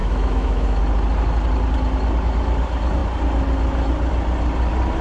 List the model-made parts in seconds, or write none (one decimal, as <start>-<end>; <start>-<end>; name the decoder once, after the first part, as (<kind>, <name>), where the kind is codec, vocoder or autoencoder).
0.0-0.8 (autoencoder, DAC-VAE)